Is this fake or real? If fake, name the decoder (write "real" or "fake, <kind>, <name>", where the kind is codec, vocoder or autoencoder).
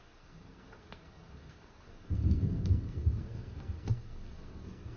fake, codec, SNAC